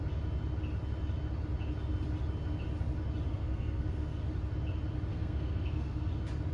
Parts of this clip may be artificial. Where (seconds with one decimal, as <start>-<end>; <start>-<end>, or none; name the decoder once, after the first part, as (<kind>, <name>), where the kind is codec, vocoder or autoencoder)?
3.3-4.2 (codec, SNAC); 5.1-6.1